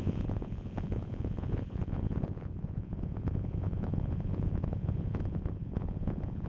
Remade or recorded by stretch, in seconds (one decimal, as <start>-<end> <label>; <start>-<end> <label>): 0.0-6.5 remade